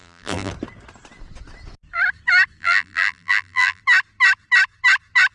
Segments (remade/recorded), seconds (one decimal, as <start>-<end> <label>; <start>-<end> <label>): 0.0-0.5 remade; 0.5-2.6 recorded; 2.6-3.8 remade; 3.8-5.3 recorded